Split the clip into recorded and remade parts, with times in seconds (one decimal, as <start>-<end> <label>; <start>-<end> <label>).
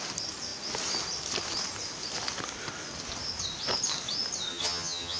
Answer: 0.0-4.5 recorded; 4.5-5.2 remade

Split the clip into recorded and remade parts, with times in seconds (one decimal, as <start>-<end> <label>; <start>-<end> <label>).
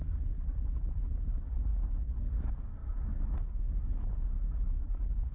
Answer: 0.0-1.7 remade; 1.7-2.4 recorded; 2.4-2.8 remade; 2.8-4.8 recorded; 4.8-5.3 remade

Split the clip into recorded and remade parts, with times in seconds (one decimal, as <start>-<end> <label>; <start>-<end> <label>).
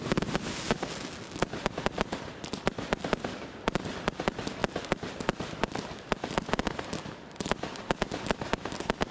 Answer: 0.0-9.1 recorded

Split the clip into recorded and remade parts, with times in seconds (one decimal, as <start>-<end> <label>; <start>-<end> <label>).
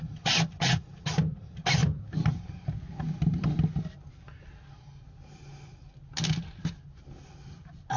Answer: 0.0-8.0 recorded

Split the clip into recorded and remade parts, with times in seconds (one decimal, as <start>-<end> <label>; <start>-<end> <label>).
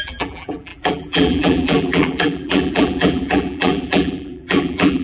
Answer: 0.0-5.0 remade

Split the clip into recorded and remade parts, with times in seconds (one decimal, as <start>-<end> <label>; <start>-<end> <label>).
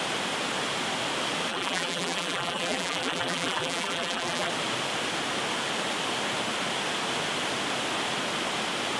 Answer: 0.0-1.5 recorded; 1.5-4.5 remade; 4.5-9.0 recorded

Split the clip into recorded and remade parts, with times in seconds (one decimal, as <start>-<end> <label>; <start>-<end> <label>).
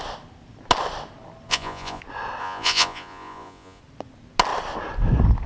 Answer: 0.0-1.5 recorded; 1.5-2.0 remade; 2.0-2.4 recorded; 2.4-3.8 remade; 3.8-5.5 recorded